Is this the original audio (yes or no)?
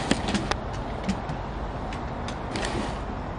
yes